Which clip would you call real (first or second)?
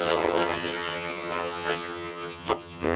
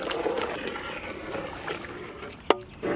second